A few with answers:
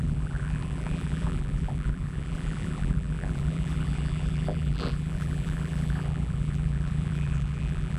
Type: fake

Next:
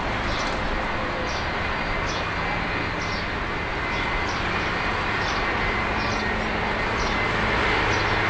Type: real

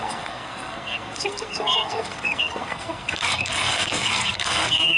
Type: fake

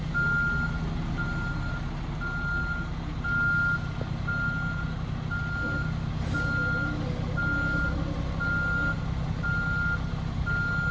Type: real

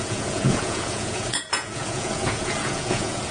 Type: fake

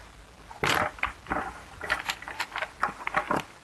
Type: real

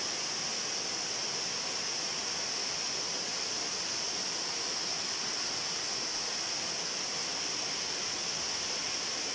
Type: real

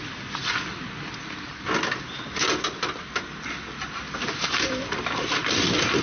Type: real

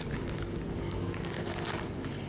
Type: fake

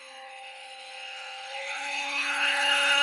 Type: fake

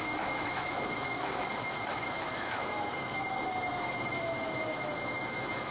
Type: fake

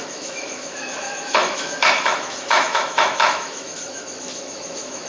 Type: fake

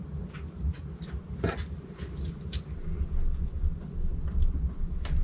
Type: real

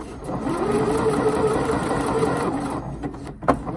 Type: real